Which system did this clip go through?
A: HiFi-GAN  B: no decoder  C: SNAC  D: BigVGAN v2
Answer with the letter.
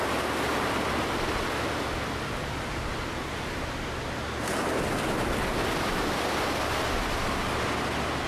B